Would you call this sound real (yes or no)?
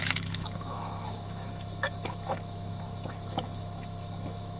no